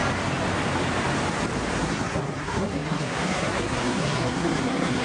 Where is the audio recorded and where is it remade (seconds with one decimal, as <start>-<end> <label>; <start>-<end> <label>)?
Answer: 0.0-1.8 recorded; 1.8-5.0 remade